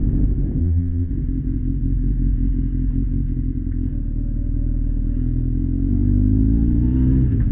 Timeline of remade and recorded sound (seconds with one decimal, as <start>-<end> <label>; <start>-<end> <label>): 0.0-0.6 recorded; 0.6-1.1 remade; 1.1-7.5 recorded